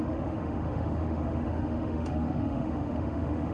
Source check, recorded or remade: remade